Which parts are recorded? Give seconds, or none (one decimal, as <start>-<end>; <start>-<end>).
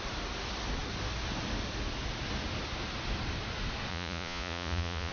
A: 0.0-3.9